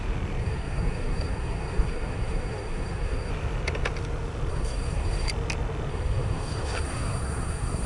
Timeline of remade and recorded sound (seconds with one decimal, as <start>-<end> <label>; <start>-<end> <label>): 0.0-0.4 recorded; 0.4-3.3 remade; 3.3-4.5 recorded; 4.5-5.3 remade; 5.3-5.9 recorded; 5.9-7.9 remade